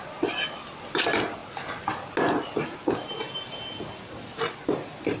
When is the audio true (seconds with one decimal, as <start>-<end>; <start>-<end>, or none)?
0.0-5.2